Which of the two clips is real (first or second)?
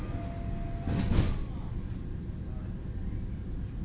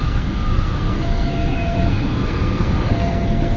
first